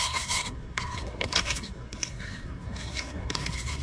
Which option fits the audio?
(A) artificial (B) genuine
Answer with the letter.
A